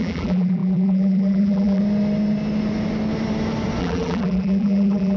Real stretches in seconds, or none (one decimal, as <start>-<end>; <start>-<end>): 1.8-3.8